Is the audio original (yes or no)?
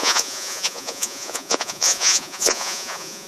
no